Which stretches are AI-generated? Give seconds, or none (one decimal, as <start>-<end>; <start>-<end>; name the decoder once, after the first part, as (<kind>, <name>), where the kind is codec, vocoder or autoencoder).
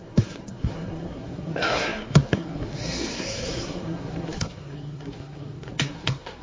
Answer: 0.0-6.4 (codec, SNAC)